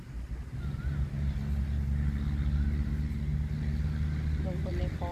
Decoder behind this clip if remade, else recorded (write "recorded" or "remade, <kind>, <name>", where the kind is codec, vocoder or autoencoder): recorded